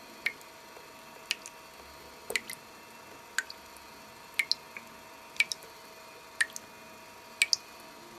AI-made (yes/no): no